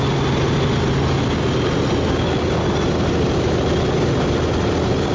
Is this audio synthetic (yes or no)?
no